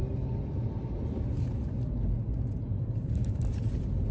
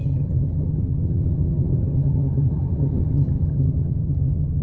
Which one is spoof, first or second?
second